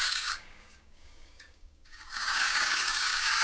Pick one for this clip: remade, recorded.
remade